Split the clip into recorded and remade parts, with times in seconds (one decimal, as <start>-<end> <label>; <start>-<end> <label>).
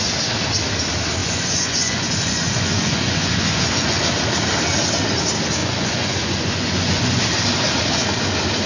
0.0-1.2 recorded; 1.2-4.1 remade; 4.1-5.6 recorded; 5.6-7.2 remade; 7.2-8.7 recorded